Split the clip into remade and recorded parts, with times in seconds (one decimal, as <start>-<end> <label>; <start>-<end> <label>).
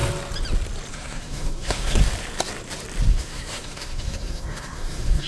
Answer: 0.0-0.9 recorded; 0.9-2.0 remade; 2.0-3.1 recorded; 3.1-5.3 remade